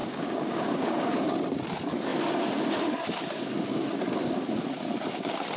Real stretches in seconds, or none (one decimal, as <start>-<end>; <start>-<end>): 1.2-5.6